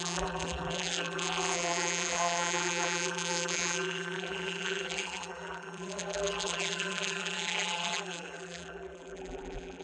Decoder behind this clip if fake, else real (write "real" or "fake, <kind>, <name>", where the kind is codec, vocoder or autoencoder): fake, vocoder, BigVGAN v2